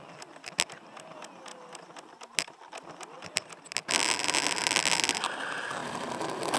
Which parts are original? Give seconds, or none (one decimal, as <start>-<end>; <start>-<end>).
0.0-6.6